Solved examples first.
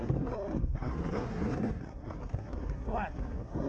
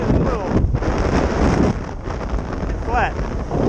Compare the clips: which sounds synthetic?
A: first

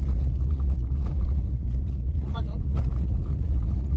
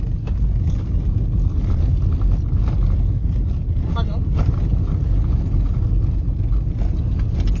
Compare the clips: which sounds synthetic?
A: first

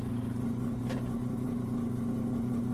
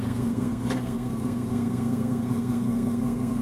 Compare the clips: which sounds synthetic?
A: second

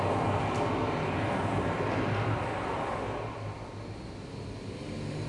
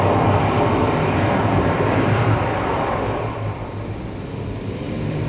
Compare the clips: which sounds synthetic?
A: second